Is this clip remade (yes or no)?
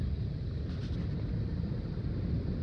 no